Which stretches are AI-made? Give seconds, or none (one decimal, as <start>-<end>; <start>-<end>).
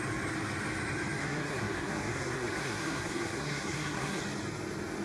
1.2-4.2